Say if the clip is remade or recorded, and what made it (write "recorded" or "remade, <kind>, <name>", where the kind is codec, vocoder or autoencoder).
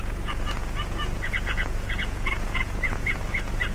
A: remade, vocoder, Vocos